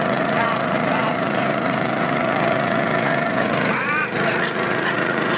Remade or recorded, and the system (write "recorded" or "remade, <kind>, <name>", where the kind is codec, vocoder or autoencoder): remade, vocoder, Vocos